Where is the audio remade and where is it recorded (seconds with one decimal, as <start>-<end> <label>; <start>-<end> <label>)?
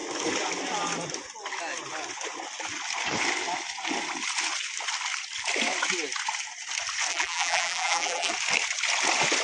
0.0-7.1 recorded; 7.1-8.3 remade; 8.3-9.4 recorded